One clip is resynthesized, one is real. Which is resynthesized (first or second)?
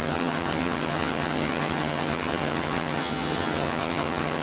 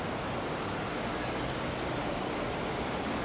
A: first